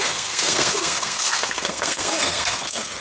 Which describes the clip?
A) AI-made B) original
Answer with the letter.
A